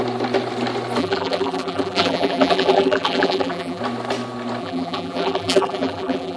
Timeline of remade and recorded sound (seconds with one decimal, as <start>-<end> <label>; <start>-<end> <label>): 0.0-1.0 recorded; 1.0-3.8 remade; 3.8-4.6 recorded; 4.6-6.4 remade